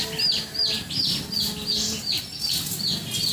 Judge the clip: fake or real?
real